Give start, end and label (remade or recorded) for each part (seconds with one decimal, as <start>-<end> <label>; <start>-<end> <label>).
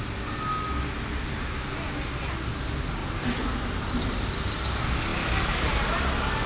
0.0-3.0 recorded; 3.0-4.6 remade; 4.6-5.1 recorded; 5.1-5.7 remade; 5.7-6.5 recorded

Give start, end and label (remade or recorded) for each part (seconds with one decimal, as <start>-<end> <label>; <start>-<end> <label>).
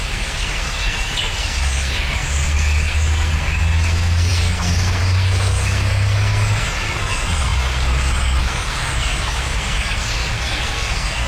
0.0-11.3 remade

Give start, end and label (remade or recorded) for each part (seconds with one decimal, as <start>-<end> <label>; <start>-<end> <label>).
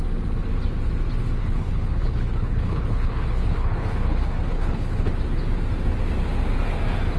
0.0-1.4 recorded; 1.4-5.1 remade; 5.1-7.2 recorded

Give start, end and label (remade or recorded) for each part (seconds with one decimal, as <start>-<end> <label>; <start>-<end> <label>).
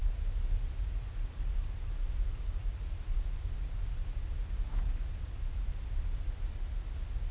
0.0-7.3 recorded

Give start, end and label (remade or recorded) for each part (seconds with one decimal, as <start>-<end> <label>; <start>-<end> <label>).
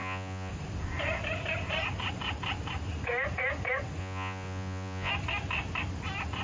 0.0-0.5 remade; 0.5-4.0 recorded; 4.0-5.1 remade; 5.1-6.4 recorded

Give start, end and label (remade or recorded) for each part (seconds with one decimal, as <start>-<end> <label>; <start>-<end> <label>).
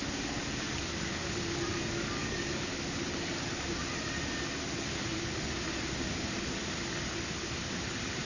0.0-8.2 recorded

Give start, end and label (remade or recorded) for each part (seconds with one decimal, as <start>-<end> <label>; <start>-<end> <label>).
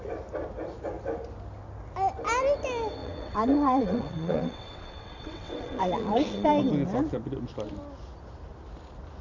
0.0-3.0 recorded; 3.0-6.5 remade; 6.5-9.2 recorded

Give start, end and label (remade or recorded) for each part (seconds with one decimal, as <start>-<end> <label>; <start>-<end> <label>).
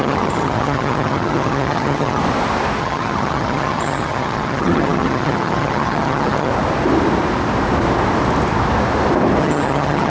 0.0-2.2 remade; 2.2-2.8 recorded; 2.8-6.5 remade; 6.5-9.4 recorded; 9.4-10.1 remade